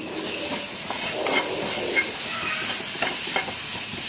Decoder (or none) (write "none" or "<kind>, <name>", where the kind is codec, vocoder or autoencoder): none